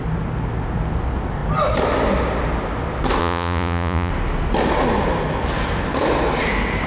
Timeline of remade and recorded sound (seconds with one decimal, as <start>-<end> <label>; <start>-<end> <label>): 0.0-3.2 recorded; 3.2-4.1 remade; 4.1-6.9 recorded